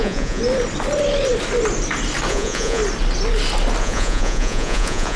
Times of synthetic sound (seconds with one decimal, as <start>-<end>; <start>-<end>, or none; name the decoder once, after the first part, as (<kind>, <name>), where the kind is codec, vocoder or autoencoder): 0.0-0.4 (vocoder, Vocos); 2.3-2.8; 3.8-5.2